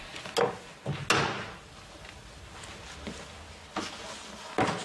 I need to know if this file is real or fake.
real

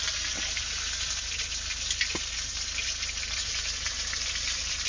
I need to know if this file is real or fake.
real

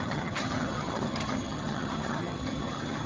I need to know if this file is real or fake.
fake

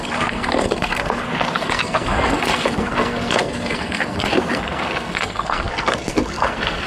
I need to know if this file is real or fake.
fake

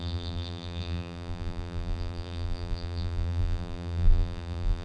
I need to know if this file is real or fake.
fake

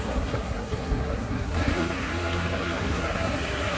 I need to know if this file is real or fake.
fake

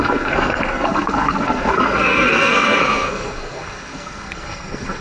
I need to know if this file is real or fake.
fake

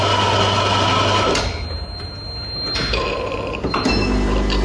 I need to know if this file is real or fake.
real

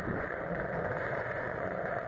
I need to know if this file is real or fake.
fake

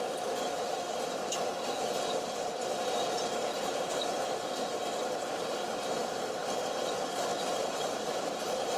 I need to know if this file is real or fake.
fake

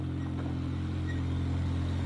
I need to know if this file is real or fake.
real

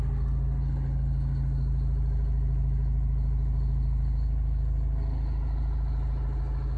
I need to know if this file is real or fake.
real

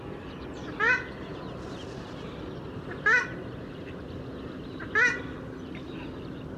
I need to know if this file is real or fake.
real